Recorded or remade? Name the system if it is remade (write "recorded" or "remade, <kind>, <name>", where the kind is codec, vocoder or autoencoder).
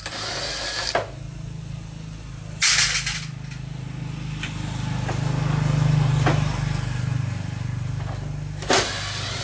recorded